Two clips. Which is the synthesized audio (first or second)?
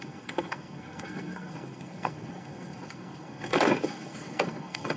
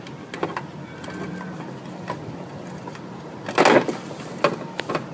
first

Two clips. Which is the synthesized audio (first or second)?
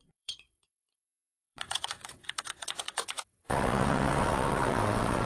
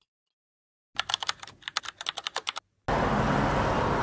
first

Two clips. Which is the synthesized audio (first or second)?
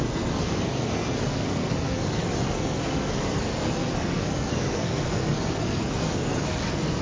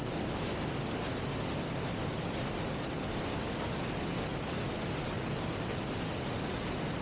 first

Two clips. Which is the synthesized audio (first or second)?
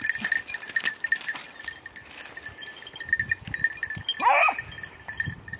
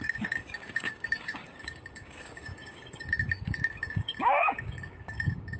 second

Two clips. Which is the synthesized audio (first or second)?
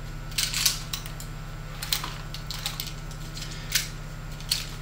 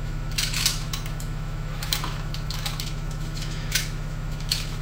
second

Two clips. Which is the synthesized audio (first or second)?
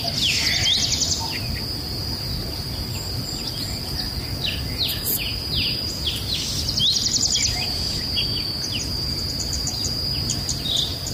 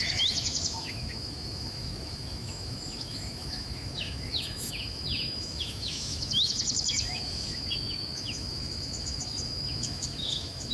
second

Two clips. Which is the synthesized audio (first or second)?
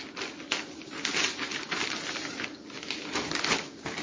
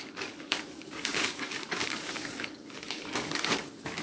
second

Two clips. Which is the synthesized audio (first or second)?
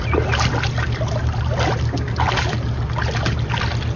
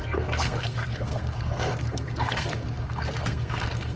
second